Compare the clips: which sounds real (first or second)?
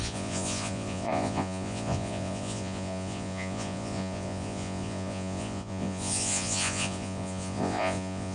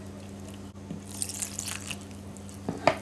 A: second